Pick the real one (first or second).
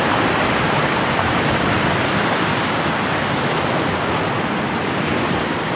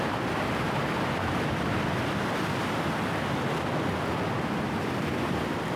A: second